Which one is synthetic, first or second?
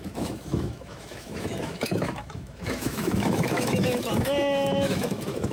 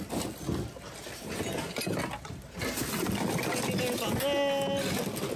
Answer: first